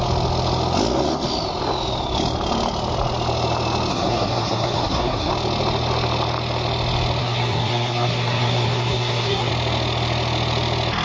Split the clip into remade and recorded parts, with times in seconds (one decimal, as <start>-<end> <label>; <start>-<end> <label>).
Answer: 0.0-3.9 recorded; 3.9-5.3 remade; 5.3-7.2 recorded; 7.2-9.5 remade; 9.5-11.0 recorded